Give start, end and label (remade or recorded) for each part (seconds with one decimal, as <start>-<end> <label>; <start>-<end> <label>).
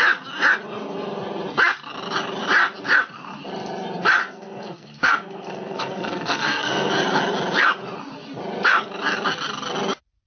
0.0-4.2 recorded; 4.2-6.9 remade; 6.9-10.3 recorded